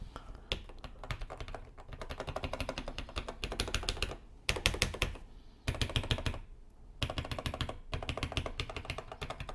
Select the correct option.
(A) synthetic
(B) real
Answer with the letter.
B